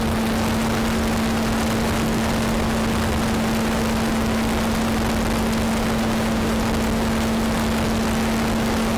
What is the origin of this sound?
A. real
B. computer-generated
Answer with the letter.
A